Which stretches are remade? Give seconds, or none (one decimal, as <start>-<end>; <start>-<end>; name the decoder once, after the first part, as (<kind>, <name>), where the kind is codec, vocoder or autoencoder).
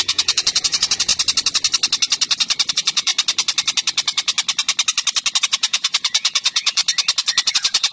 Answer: 0.0-1.1 (vocoder, Vocos); 2.7-3.1; 5.4-6.8; 7.5-7.9